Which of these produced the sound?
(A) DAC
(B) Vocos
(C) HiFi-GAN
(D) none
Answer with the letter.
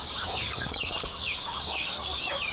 A